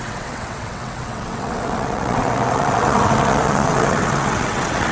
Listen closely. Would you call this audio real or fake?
fake